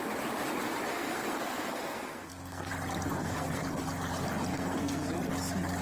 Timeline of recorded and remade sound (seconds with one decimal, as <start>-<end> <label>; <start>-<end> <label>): 0.0-0.9 recorded; 0.9-2.7 remade; 2.7-3.1 recorded; 3.1-3.6 remade; 3.6-4.5 recorded; 4.5-5.1 remade; 5.1-5.8 recorded